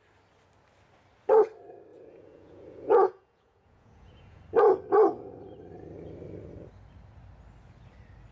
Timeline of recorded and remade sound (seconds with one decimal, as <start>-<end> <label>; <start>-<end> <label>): 0.0-1.9 recorded; 1.9-4.4 remade; 4.4-8.3 recorded